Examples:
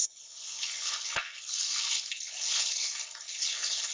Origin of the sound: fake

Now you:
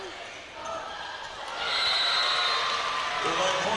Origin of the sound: real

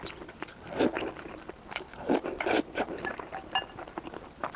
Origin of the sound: real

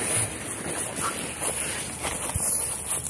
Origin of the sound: real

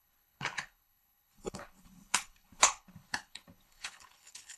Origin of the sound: fake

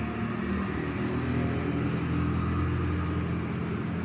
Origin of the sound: real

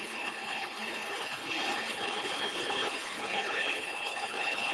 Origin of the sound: fake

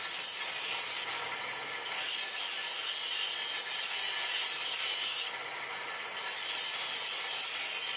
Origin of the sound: real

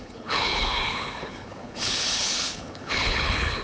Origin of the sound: fake